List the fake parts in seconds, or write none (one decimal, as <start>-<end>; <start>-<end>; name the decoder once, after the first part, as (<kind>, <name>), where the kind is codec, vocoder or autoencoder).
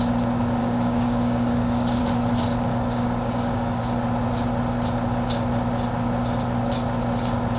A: 0.6-2.0 (codec, DAC); 2.7-3.8